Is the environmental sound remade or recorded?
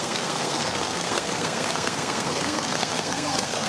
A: remade